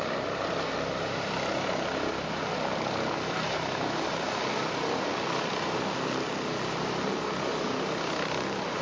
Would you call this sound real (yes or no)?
yes